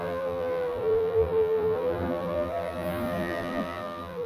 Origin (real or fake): fake